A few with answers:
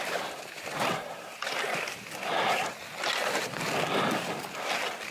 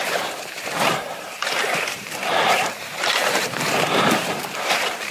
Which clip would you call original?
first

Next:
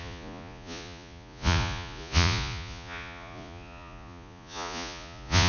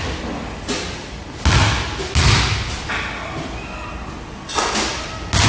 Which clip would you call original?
second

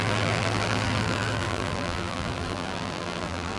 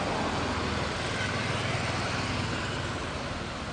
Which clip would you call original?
second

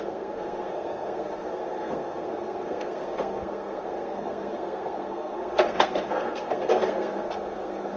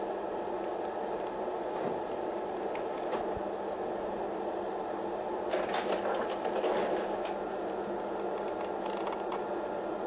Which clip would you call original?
second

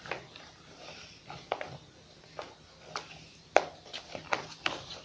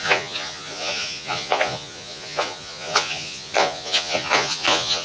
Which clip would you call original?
first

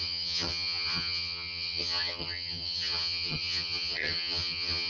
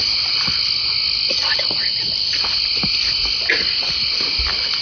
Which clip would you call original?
second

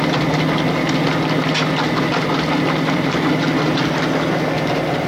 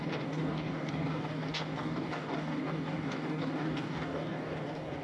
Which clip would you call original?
first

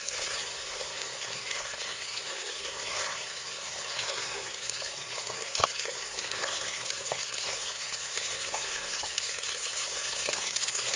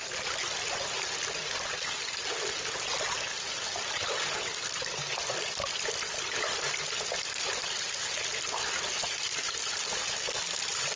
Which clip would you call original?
second